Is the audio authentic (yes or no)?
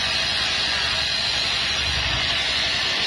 no